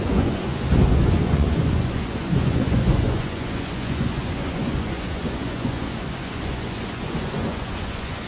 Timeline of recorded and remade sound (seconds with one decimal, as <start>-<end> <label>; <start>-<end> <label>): 0.0-8.3 remade